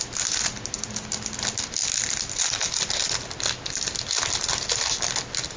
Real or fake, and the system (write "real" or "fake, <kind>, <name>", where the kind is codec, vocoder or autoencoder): real